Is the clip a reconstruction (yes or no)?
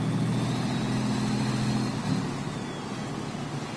no